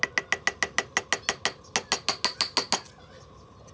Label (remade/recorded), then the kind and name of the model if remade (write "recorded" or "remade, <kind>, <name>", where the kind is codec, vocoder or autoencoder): recorded